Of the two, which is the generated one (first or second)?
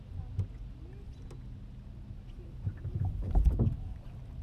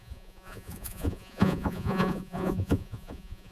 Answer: second